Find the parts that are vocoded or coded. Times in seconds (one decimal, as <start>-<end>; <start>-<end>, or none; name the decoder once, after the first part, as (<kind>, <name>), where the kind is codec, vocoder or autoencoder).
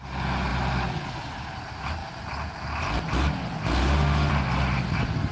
3.8-4.3 (autoencoder, DAC-VAE)